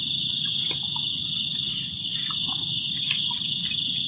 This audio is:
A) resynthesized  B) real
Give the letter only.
B